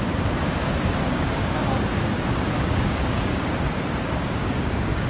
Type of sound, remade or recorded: remade